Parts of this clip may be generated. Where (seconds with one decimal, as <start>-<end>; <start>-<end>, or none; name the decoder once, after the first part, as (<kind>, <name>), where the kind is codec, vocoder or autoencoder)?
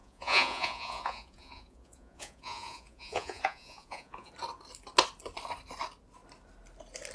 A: 0.0-4.3 (vocoder, Vocos)